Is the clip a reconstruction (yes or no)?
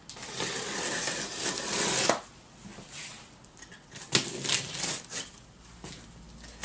no